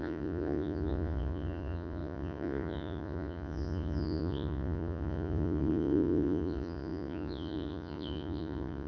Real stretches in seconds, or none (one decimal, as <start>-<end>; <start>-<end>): none